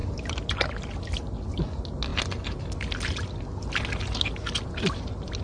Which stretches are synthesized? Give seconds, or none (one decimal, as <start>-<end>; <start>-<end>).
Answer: none